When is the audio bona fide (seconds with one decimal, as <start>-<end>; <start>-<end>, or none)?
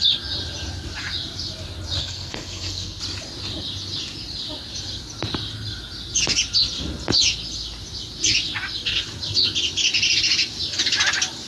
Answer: 0.0-2.0; 3.0-11.5